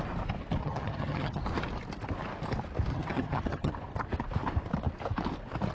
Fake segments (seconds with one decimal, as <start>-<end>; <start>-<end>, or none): 0.6-1.4; 2.9-3.7